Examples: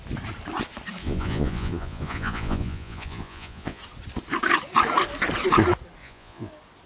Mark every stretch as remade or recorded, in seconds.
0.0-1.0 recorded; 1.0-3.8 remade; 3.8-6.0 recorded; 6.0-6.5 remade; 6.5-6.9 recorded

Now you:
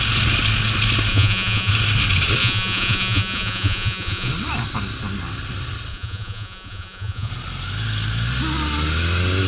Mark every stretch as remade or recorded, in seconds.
0.0-1.1 recorded; 1.1-1.7 remade; 1.7-2.4 recorded; 2.4-4.3 remade; 4.3-5.9 recorded; 5.9-7.3 remade; 7.3-9.5 recorded

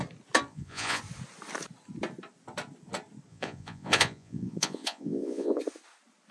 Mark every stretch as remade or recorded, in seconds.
0.0-0.5 recorded; 0.5-1.0 remade; 1.0-3.3 recorded; 3.3-5.6 remade; 5.6-6.3 recorded

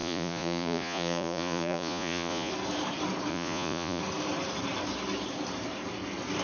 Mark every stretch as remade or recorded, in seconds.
0.0-2.5 remade; 2.5-3.3 recorded; 3.3-4.0 remade; 4.0-6.4 recorded

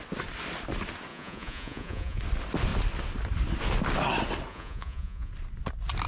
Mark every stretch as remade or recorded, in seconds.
0.0-1.1 recorded; 1.1-2.2 remade; 2.2-4.5 recorded; 4.5-5.3 remade; 5.3-6.1 recorded

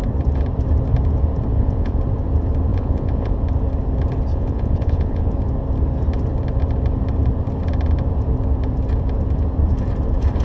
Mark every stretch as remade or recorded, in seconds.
0.0-1.5 recorded; 1.5-2.0 remade; 2.0-2.7 recorded; 2.7-3.3 remade; 3.3-4.3 recorded; 4.3-5.3 remade; 5.3-10.4 recorded